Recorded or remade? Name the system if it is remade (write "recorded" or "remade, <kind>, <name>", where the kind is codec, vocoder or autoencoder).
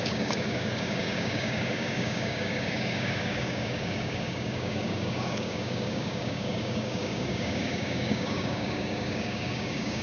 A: remade, codec, DAC